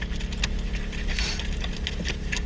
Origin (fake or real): real